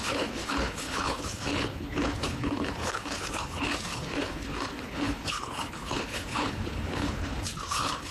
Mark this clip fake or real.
fake